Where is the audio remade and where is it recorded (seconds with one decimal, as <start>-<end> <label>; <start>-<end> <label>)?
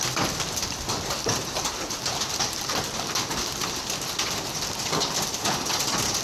0.0-1.2 recorded; 1.2-3.0 remade; 3.0-6.2 recorded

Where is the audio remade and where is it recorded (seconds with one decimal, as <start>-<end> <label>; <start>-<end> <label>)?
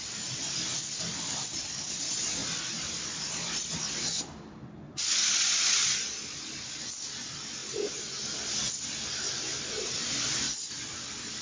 0.0-11.4 recorded